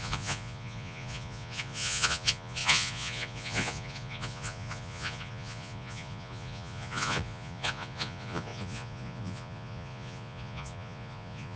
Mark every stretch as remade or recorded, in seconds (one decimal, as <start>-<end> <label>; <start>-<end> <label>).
0.0-11.6 remade